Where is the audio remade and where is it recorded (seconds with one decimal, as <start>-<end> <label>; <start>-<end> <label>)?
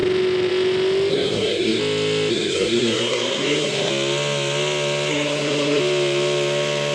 0.0-1.1 recorded; 1.1-1.8 remade; 1.8-2.3 recorded; 2.3-3.9 remade; 3.9-5.1 recorded; 5.1-5.8 remade; 5.8-6.9 recorded